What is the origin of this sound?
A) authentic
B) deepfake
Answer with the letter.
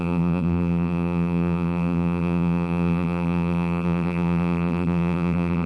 B